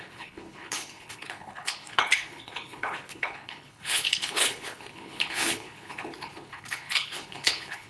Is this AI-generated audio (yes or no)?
yes